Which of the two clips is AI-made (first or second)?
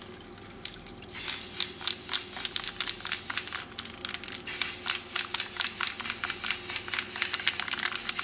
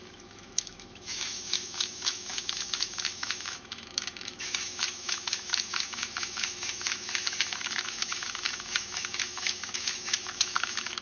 second